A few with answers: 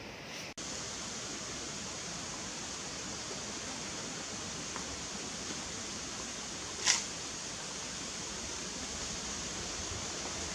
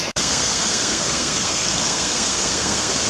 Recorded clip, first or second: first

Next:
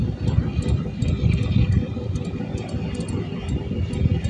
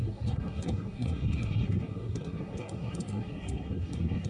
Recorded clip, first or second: first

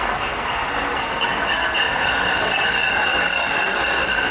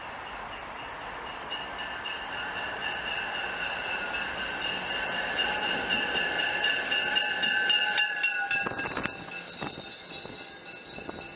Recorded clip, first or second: second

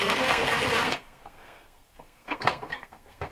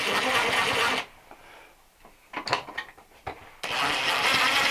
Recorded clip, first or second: second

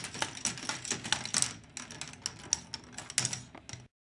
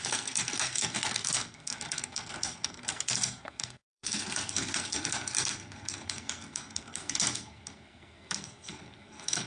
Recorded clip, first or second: first